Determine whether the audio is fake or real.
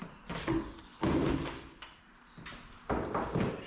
real